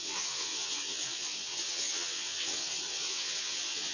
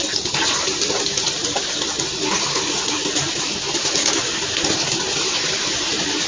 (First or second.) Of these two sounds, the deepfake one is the first